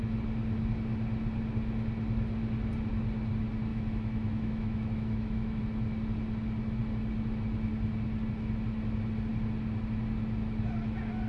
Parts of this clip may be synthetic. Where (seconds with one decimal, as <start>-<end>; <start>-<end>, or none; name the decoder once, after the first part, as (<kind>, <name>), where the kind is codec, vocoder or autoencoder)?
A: 3.7-5.6 (autoencoder, DAC-VAE)